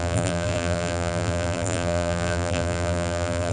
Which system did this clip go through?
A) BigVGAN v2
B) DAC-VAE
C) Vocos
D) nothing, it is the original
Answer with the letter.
A